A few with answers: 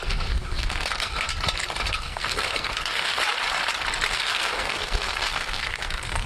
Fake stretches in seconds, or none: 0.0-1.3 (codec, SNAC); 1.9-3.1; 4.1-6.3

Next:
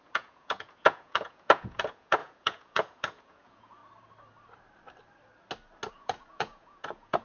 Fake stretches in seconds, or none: 0.0-3.8 (vocoder, Vocos); 5.9-7.2

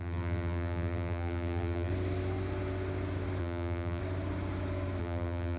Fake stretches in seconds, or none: 0.0-1.9 (vocoder, BigVGAN v2); 3.4-4.0; 5.0-5.6

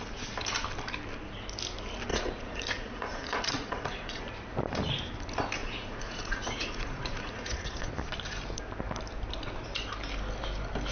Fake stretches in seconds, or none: 2.1-4.2 (vocoder, Vocos); 5.6-7.9